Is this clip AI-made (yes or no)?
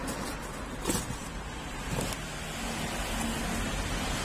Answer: no